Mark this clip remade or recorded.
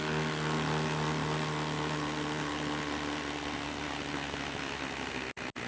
recorded